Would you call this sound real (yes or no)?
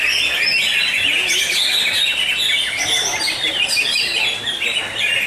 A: yes